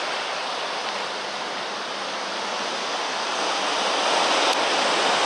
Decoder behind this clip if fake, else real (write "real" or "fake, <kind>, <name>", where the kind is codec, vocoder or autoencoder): real